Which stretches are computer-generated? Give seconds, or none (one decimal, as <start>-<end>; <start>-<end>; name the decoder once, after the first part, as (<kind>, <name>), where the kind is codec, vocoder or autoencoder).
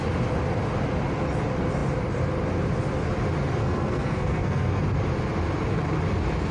3.6-4.8 (codec, SNAC)